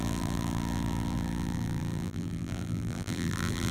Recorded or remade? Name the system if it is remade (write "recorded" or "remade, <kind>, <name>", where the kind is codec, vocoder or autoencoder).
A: remade, vocoder, BigVGAN v2